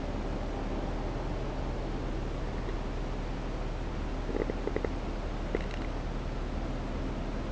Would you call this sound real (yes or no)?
yes